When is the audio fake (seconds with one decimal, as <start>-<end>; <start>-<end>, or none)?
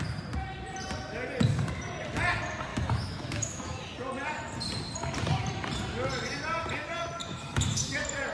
2.7-3.8; 7.2-7.8